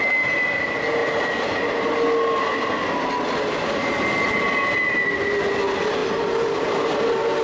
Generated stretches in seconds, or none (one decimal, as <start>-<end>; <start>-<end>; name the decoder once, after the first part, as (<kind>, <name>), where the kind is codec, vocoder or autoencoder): none